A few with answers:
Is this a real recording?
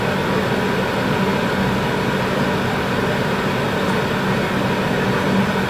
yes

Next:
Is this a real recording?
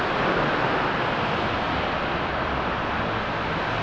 yes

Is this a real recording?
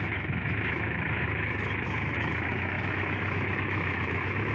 no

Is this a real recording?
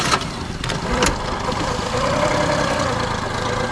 yes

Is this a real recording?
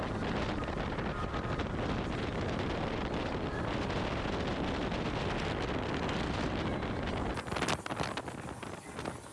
yes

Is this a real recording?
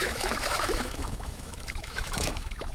no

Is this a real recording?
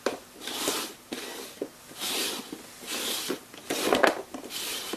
yes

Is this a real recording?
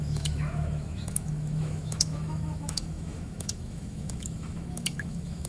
no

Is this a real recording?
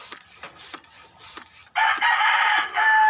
yes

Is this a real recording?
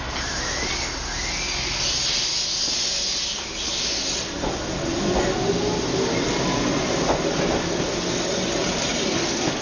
yes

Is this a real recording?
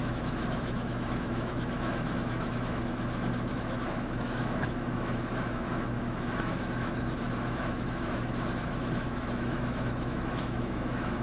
no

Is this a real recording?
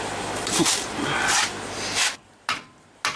yes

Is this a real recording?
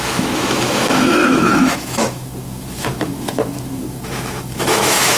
no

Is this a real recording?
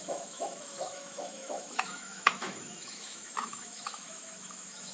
no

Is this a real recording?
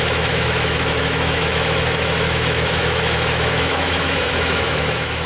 no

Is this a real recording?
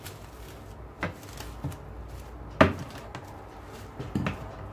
yes